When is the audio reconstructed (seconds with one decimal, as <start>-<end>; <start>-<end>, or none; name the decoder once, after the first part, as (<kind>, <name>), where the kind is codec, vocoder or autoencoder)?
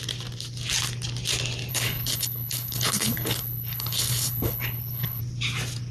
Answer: 1.7-5.2 (codec, HILCodec)